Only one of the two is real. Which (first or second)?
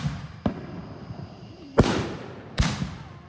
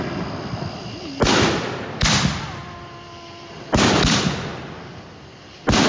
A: second